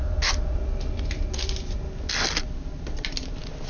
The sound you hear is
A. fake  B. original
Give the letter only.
B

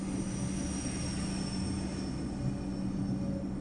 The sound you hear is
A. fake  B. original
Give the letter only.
B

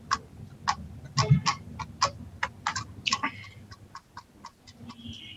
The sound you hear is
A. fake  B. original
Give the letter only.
B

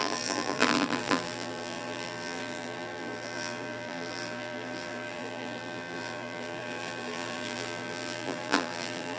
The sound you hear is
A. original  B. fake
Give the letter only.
B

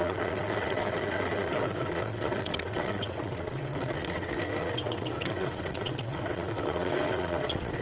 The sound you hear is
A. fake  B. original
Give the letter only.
A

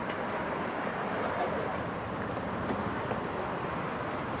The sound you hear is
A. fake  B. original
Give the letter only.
B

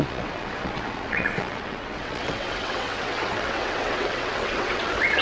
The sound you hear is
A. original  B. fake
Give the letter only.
B